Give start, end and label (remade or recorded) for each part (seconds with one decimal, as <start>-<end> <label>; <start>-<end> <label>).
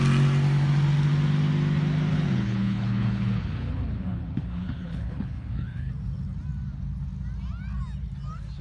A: 0.0-2.1 recorded; 2.1-5.9 remade; 5.9-8.6 recorded